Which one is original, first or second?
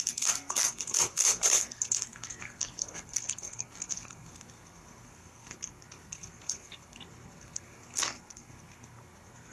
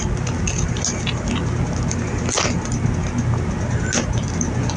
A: second